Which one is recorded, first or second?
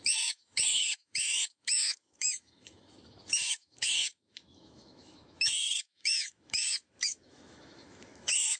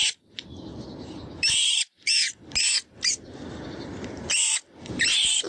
second